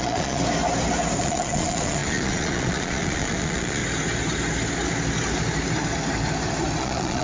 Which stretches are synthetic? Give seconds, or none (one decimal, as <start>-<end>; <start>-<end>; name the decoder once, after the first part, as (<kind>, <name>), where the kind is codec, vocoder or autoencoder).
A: 0.0-0.4 (vocoder, Vocos); 1.2-3.8; 6.8-7.2